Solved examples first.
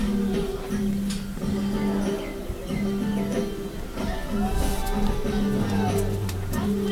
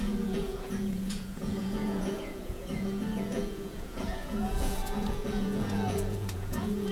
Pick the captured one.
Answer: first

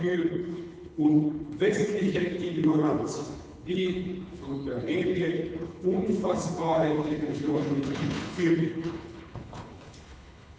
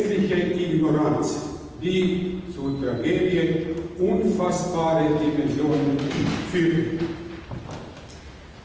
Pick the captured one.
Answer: second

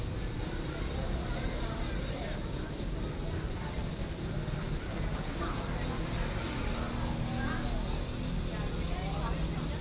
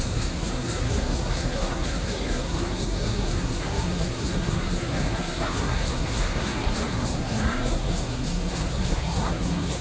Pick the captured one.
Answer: first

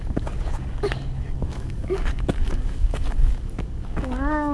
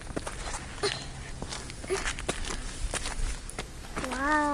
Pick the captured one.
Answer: second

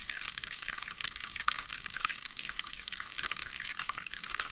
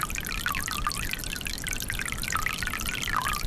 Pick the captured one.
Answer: second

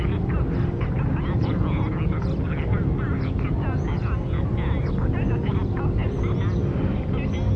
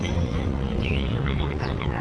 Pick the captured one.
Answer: first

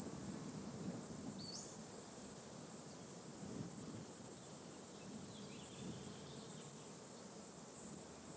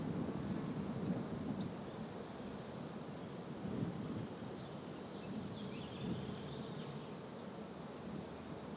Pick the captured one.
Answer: second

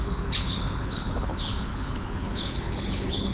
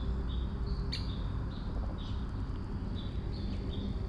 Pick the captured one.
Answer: second